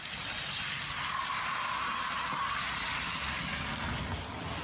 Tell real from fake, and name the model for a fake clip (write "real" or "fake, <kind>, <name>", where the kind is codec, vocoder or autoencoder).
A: real